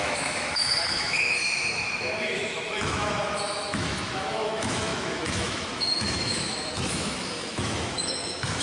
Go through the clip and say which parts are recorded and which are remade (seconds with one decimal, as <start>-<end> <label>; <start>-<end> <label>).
0.0-8.6 remade